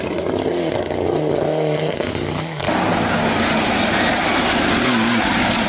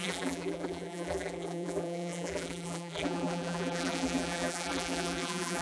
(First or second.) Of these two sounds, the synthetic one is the second